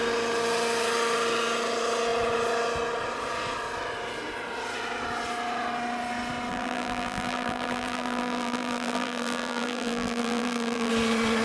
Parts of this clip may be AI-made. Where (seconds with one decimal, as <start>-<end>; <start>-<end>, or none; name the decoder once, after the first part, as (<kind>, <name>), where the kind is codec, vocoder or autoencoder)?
6.5-10.9 (vocoder, BigVGAN v2)

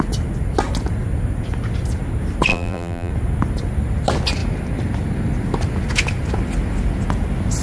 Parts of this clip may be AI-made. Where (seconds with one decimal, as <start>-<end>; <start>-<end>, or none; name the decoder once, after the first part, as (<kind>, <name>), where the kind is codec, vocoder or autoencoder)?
2.5-3.1 (vocoder, BigVGAN v2)

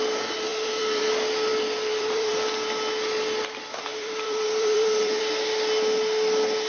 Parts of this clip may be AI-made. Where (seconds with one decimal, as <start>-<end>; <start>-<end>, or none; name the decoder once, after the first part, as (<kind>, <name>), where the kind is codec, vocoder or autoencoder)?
0.5-1.1 (vocoder, BigVGAN v2); 1.5-2.3; 3.9-5.2

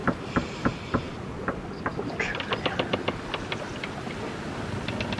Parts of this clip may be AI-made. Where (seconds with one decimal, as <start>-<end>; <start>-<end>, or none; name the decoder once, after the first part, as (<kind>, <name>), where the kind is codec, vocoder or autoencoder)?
none